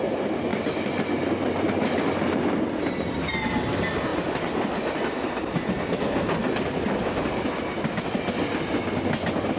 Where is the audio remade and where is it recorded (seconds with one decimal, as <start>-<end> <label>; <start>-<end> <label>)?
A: 0.0-9.6 recorded